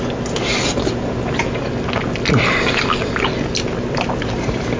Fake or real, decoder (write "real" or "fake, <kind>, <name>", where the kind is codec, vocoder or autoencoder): real